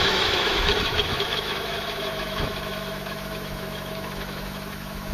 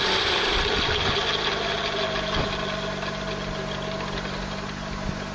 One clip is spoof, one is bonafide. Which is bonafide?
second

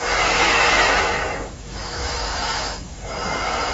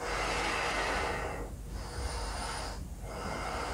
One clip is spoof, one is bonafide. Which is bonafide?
second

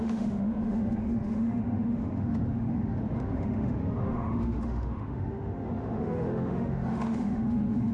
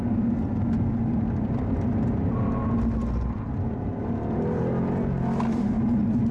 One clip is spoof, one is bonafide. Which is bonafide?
second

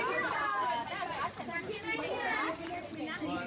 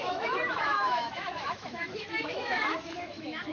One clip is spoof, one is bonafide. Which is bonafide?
first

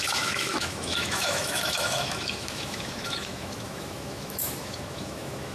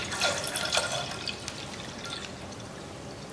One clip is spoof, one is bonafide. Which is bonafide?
second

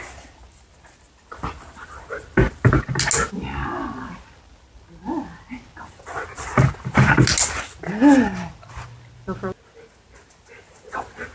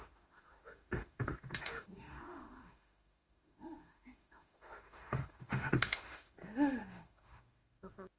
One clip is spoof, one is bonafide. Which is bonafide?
first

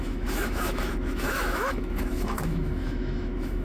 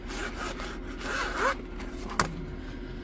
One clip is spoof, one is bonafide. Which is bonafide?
second